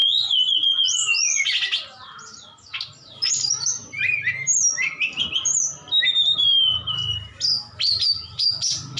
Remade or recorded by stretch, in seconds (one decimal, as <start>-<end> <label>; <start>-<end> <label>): 0.0-1.5 remade; 1.5-9.0 recorded